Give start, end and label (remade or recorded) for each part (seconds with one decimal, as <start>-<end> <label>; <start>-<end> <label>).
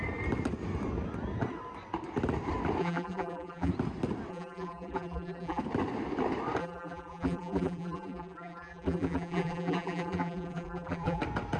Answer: 0.0-2.8 recorded; 2.8-3.7 remade; 3.7-4.3 recorded; 4.3-5.6 remade; 5.6-6.6 recorded; 6.6-11.2 remade; 11.2-11.6 recorded